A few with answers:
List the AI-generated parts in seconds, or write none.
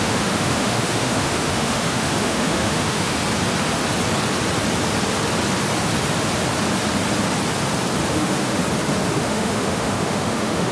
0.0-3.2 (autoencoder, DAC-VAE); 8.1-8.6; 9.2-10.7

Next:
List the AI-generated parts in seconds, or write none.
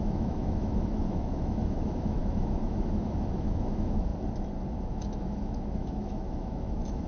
0.0-4.1 (autoencoder, DAC-VAE); 4.9-7.1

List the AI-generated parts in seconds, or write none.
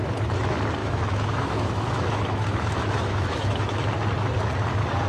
0.8-3.9 (autoencoder, DAC-VAE)